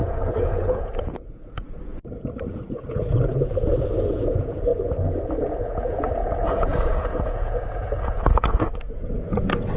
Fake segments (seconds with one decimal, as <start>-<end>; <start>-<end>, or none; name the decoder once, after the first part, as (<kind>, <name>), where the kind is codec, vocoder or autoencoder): 0.0-4.7 (vocoder, Vocos); 5.4-9.8